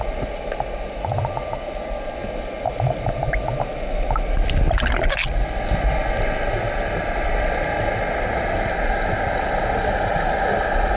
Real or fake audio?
real